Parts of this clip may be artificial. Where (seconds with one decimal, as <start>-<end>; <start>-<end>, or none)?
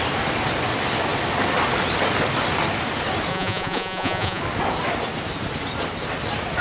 3.3-4.4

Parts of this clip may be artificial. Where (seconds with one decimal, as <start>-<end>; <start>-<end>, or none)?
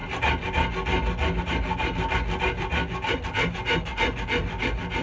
none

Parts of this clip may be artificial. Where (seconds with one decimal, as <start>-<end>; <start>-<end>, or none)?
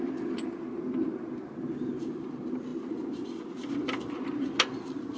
none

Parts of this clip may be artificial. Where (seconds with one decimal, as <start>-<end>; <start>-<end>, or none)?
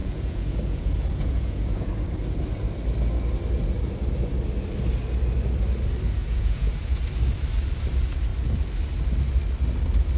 0.0-1.9; 6.2-7.0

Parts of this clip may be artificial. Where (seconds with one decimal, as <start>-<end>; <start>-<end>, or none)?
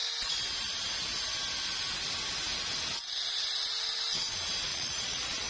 4.7-5.5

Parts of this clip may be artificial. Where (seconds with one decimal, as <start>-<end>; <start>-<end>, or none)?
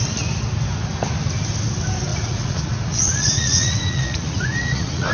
2.1-5.1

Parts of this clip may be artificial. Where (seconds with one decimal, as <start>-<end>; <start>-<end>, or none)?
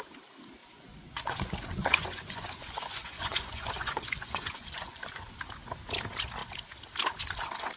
0.6-5.3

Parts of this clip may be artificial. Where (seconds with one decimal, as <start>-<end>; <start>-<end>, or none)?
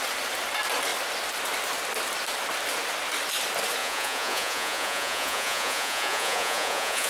3.8-7.1